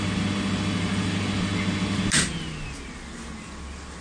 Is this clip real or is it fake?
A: real